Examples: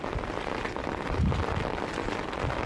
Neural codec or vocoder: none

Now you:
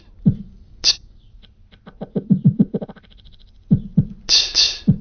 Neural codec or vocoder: none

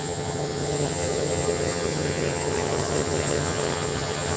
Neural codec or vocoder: vocoder, HiFi-GAN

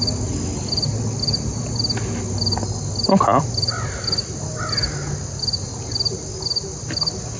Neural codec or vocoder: none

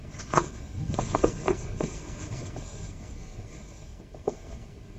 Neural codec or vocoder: codec, SNAC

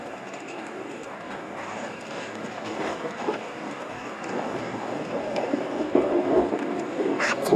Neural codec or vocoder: codec, DAC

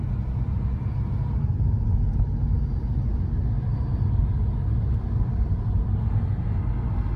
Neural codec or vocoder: none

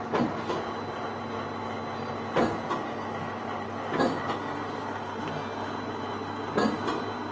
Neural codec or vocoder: none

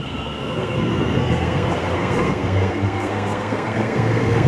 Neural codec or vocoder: codec, SNAC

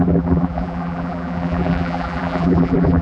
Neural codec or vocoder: vocoder, BigVGAN v2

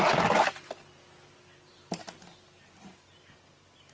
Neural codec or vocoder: none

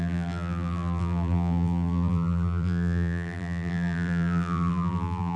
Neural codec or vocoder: vocoder, BigVGAN v2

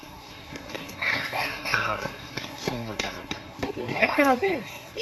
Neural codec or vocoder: codec, SNAC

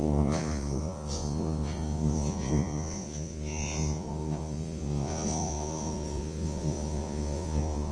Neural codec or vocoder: vocoder, Vocos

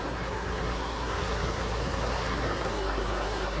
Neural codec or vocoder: codec, SNAC